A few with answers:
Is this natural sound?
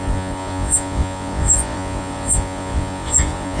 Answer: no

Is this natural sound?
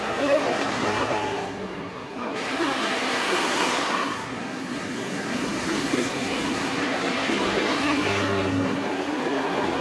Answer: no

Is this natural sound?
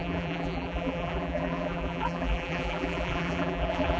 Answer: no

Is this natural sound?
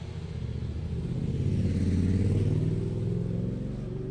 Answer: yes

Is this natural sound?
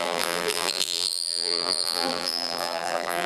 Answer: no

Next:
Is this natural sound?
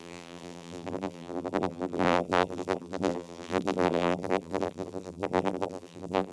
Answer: no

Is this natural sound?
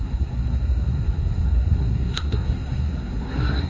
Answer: no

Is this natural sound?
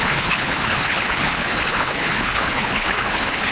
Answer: no